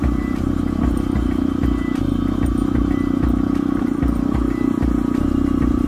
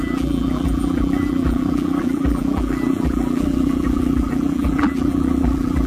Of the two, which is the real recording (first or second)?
first